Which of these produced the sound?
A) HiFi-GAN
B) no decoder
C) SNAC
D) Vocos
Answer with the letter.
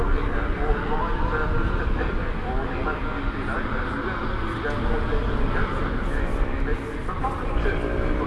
B